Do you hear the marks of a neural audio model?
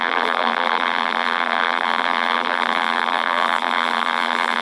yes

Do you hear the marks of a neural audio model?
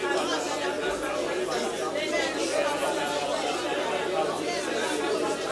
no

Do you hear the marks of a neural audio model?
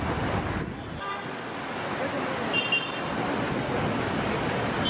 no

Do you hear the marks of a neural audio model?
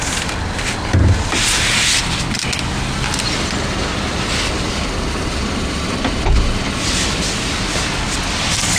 no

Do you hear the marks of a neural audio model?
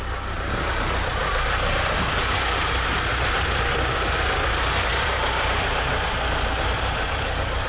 yes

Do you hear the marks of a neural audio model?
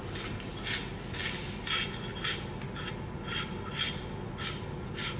no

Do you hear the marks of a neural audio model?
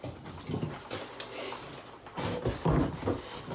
no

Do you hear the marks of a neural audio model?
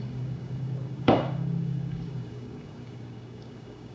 yes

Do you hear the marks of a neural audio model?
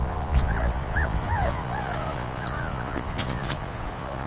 yes